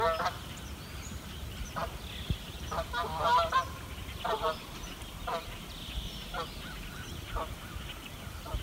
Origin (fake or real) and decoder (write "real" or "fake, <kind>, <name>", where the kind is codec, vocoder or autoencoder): real